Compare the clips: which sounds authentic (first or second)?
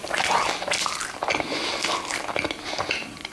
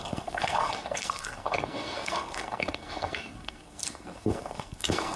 first